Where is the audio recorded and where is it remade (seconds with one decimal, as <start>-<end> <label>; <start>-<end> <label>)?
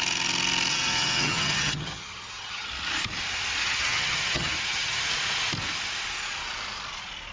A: 0.0-0.7 recorded; 0.7-2.7 remade; 2.7-3.6 recorded; 3.6-5.0 remade; 5.0-7.3 recorded